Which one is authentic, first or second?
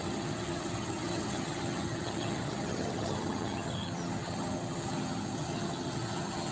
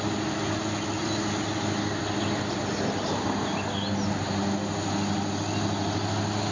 second